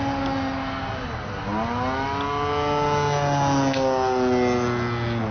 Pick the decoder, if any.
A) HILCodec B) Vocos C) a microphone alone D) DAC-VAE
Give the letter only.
C